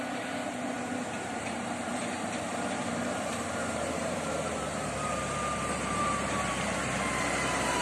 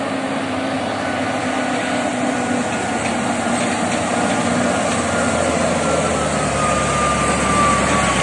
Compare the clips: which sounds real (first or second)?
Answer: second